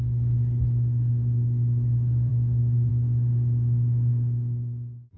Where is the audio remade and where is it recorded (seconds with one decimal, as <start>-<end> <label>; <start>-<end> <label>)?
0.0-2.3 recorded; 2.3-2.9 remade; 2.9-5.2 recorded